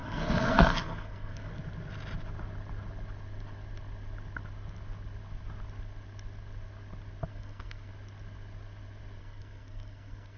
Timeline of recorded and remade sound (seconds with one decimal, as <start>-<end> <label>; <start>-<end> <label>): 0.0-1.5 remade; 1.5-7.3 recorded; 7.3-7.9 remade; 7.9-9.2 recorded; 9.2-10.4 remade